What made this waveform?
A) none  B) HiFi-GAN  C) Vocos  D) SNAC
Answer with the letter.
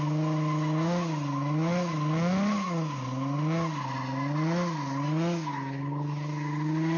A